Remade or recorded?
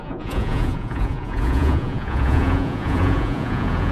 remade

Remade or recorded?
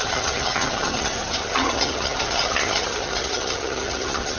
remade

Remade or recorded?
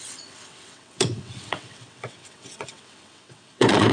remade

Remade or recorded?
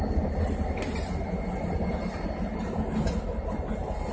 recorded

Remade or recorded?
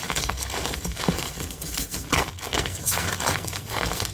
remade